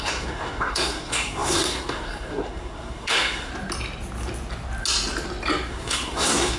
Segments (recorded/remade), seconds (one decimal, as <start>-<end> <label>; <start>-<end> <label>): 0.0-3.5 remade; 3.5-5.7 recorded; 5.7-6.6 remade